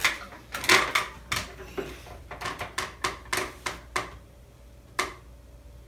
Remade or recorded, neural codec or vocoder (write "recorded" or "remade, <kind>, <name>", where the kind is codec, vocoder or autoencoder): recorded